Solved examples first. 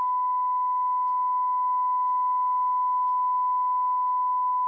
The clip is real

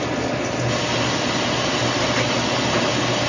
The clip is real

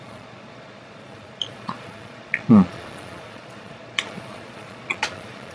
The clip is fake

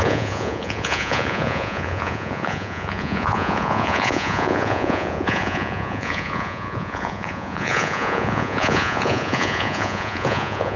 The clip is fake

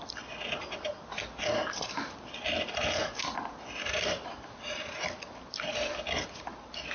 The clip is real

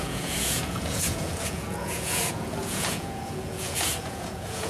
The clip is fake